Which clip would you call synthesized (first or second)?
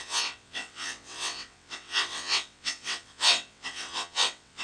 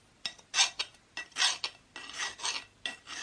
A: first